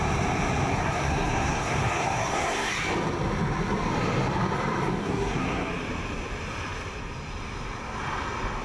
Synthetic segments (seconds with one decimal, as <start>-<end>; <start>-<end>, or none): 0.7-2.7; 5.0-5.7